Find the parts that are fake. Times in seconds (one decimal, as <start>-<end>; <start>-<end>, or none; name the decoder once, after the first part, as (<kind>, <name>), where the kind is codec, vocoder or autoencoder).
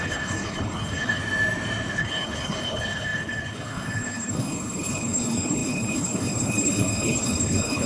0.0-1.2 (codec, HILCodec); 2.0-7.9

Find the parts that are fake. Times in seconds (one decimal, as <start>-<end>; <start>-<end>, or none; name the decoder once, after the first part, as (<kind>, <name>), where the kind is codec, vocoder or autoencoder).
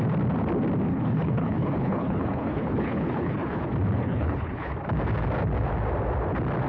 0.9-3.6 (codec, HILCodec); 4.0-4.7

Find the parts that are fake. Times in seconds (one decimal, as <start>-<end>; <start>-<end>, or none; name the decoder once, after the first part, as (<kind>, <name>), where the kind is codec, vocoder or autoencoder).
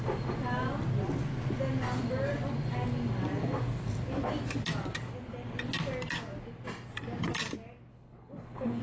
7.9-8.8 (codec, HILCodec)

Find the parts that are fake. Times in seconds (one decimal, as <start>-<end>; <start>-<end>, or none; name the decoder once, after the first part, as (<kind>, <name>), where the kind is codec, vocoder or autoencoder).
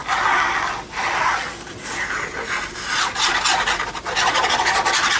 none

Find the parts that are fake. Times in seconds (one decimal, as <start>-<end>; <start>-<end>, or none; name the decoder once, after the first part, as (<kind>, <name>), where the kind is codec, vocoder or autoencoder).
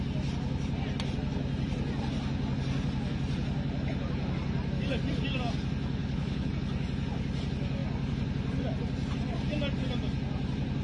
6.0-6.5 (codec, HILCodec)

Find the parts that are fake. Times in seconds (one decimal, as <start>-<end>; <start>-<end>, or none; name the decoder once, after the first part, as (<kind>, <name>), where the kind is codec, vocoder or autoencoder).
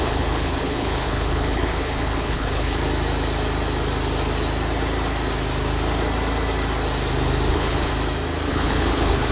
0.0-2.8 (codec, HILCodec); 7.5-7.9; 8.5-9.3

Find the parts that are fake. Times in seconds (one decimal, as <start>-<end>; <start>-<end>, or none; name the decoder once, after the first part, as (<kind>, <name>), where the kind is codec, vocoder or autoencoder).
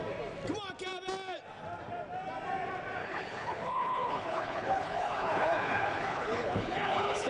3.0-7.3 (codec, HILCodec)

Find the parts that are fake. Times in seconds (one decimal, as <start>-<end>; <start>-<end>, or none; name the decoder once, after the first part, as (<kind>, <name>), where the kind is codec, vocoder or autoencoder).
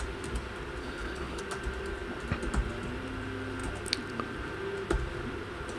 0.8-1.4 (codec, HILCodec)